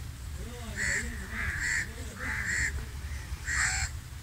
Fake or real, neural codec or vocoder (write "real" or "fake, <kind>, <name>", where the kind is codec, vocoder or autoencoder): fake, vocoder, BigVGAN v2